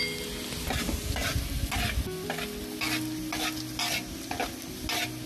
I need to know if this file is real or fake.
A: real